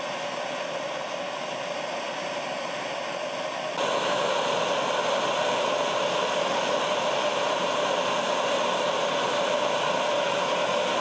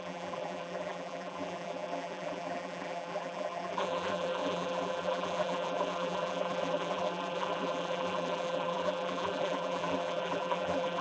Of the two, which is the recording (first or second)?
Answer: first